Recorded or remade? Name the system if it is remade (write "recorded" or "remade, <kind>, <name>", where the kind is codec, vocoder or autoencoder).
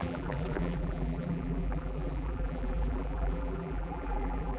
remade, vocoder, BigVGAN v2